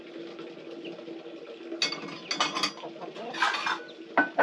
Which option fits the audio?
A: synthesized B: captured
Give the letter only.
B